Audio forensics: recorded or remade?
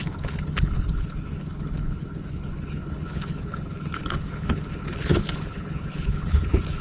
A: remade